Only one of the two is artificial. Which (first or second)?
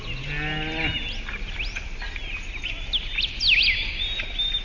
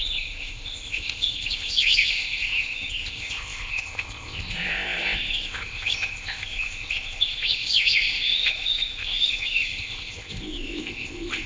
second